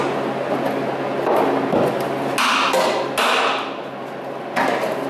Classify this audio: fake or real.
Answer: real